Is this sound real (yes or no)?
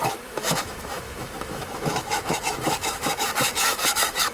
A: no